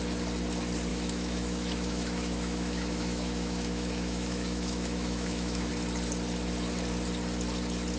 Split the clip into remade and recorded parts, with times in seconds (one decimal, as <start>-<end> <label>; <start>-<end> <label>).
0.0-0.9 recorded; 0.9-5.7 remade; 5.7-8.0 recorded